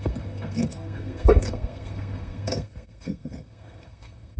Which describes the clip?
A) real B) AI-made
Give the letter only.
B